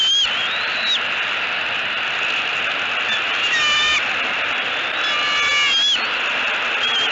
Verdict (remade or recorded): recorded